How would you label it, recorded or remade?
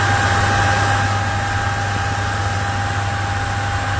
recorded